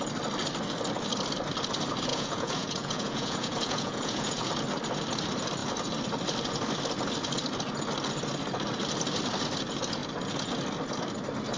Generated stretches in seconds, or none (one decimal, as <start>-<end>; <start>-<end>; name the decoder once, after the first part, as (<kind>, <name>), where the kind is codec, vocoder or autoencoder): 2.1-4.5 (vocoder, Vocos)